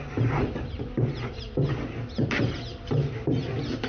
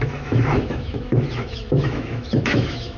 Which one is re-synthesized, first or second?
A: second